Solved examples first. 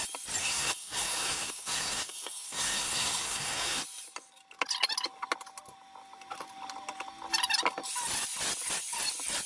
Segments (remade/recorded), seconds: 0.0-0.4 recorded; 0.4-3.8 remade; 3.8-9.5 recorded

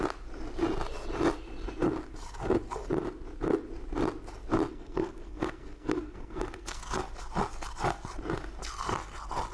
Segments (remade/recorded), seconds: 0.0-4.7 recorded; 4.7-7.1 remade; 7.1-9.5 recorded

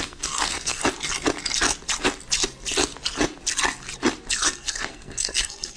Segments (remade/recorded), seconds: 0.0-0.8 remade; 0.8-4.3 recorded; 4.3-5.8 remade